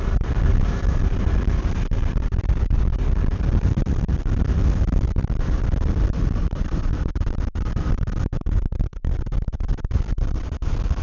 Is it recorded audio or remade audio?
remade